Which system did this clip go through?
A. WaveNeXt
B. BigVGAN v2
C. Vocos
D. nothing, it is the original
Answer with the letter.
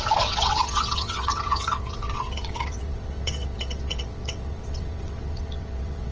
A